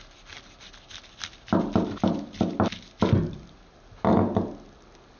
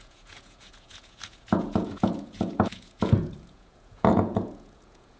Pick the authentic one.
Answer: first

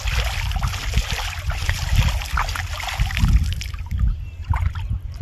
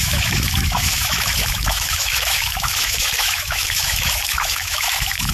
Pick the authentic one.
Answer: first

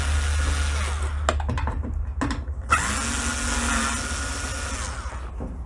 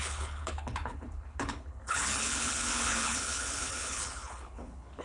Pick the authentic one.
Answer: first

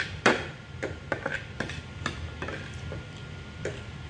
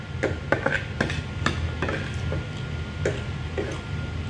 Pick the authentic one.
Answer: second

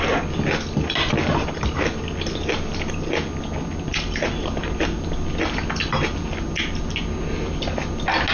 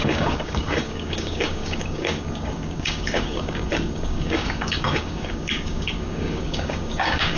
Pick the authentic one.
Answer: first